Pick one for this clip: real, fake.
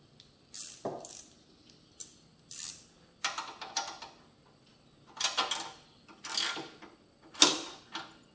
real